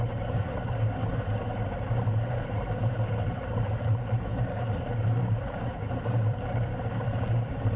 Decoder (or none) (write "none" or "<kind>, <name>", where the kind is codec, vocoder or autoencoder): vocoder, BigVGAN v2